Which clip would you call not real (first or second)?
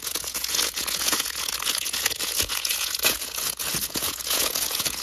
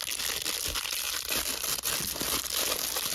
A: first